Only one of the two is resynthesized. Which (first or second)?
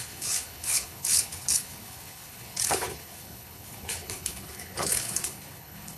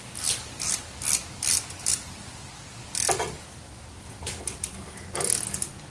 first